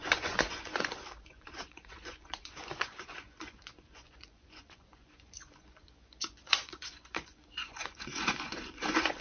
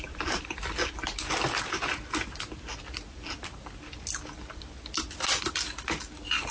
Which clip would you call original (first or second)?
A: second